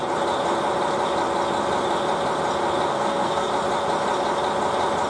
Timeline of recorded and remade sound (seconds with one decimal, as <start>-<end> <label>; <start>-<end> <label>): 0.0-2.9 recorded; 2.9-3.5 remade; 3.5-5.1 recorded